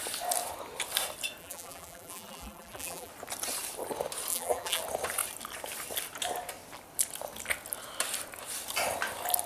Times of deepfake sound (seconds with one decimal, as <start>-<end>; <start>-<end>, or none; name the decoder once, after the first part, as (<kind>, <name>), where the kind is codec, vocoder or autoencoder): 1.4-3.1 (vocoder, BigVGAN v2); 4.3-4.8